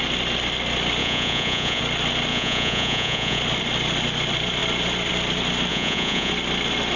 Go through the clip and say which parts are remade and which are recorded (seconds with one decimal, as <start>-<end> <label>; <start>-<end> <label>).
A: 0.0-1.0 recorded; 1.0-1.8 remade; 1.8-2.3 recorded; 2.3-3.4 remade; 3.4-5.7 recorded; 5.7-6.3 remade; 6.3-7.0 recorded